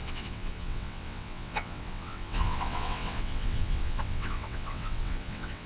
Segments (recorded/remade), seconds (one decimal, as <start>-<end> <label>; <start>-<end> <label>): 0.0-5.7 remade